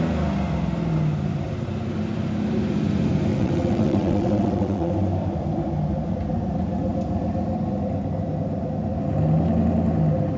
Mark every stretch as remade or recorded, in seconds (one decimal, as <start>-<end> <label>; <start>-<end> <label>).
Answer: 0.0-3.3 recorded; 3.3-4.9 remade; 4.9-10.4 recorded